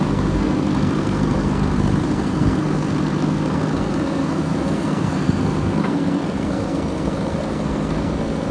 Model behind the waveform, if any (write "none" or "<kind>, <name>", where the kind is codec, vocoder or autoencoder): codec, SNAC